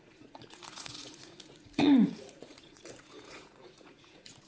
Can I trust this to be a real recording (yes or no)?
no